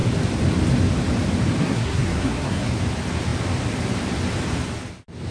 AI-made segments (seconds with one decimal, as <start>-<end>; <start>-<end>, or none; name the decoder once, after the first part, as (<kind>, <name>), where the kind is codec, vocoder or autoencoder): 1.6-2.7 (codec, SNAC)